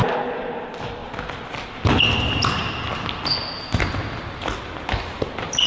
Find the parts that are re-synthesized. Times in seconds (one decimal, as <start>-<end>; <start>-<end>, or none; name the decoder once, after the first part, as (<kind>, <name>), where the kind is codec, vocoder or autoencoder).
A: none